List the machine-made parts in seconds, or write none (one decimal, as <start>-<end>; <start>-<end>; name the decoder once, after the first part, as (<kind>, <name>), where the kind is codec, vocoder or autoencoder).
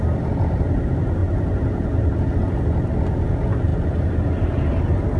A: none